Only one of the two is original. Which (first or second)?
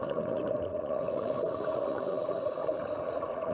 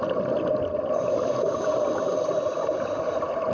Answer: second